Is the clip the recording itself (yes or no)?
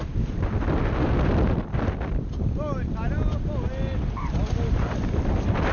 yes